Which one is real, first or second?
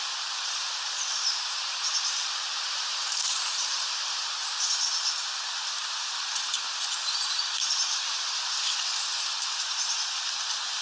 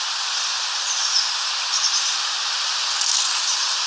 second